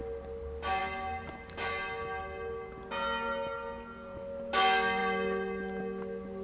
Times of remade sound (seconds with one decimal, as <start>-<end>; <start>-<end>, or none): none